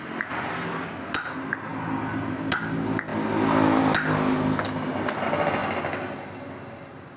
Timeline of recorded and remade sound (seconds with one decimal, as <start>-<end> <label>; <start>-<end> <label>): 0.0-7.2 recorded